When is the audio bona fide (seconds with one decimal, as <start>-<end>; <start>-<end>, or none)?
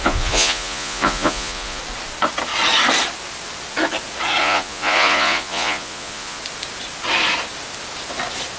1.8-4.4; 6.4-8.6